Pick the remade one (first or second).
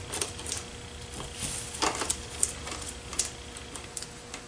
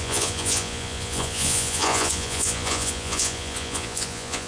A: second